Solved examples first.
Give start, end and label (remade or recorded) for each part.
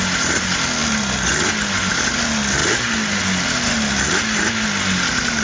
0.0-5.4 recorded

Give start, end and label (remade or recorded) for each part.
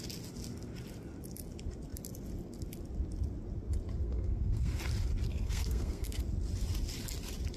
0.0-4.0 recorded; 4.0-4.8 remade; 4.8-5.3 recorded; 5.3-6.2 remade; 6.2-7.6 recorded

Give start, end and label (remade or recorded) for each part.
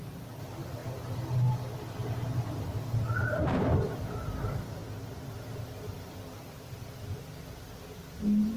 0.0-2.0 recorded; 2.0-3.7 remade; 3.7-4.8 recorded; 4.8-5.3 remade; 5.3-8.6 recorded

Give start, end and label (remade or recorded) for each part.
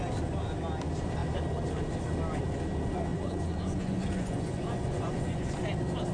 0.0-3.1 recorded; 3.1-5.6 remade; 5.6-6.1 recorded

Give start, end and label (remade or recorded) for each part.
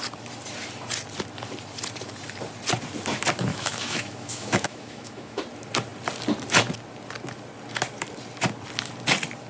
0.0-3.5 recorded; 3.5-5.4 remade; 5.4-9.5 recorded